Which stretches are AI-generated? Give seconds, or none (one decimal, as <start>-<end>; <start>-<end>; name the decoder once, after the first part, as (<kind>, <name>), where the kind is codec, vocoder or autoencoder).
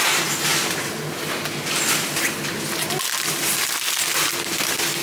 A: none